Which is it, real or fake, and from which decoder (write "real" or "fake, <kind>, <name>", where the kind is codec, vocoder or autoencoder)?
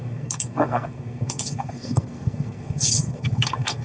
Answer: fake, codec, SNAC